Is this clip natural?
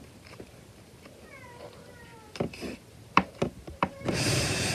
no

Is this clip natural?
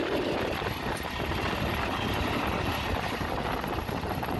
yes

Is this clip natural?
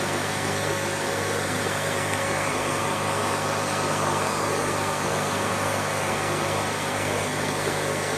no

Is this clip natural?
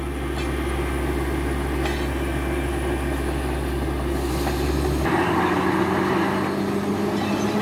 yes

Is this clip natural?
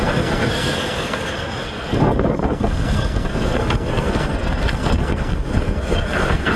no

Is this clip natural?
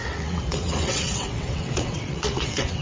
no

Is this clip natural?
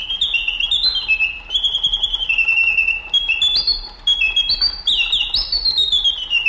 yes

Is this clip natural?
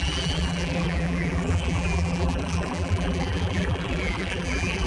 no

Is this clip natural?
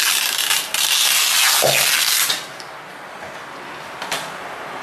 yes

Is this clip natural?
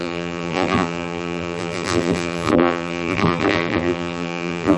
no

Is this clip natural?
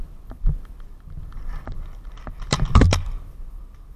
no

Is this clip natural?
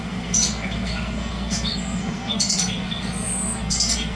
no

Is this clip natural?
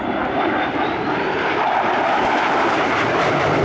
no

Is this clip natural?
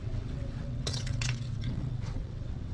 no